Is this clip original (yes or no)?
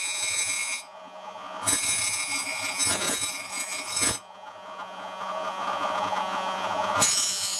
no